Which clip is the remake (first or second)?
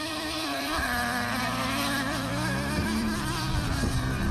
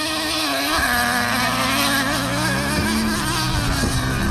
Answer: first